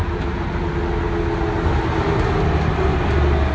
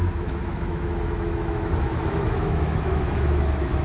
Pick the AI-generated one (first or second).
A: second